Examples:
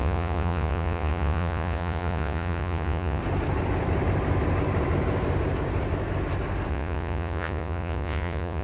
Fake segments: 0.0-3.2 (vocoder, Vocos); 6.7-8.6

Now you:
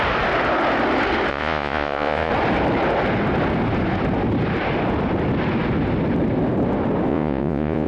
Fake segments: 1.3-2.3 (vocoder, Vocos); 7.1-7.9

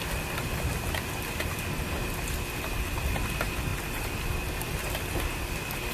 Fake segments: none

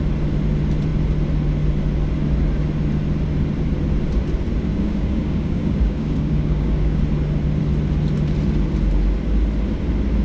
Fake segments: 4.7-7.0 (codec, DAC)

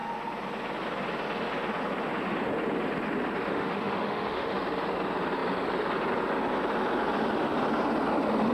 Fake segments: 3.5-4.5 (autoencoder, DAC-VAE)

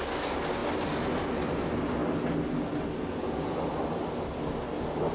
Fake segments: none

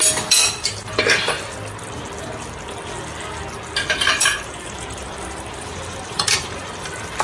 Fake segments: 0.4-1.0 (vocoder, BigVGAN v2); 4.1-6.7